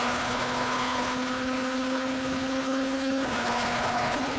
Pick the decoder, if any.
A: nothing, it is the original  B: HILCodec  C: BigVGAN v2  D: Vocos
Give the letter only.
B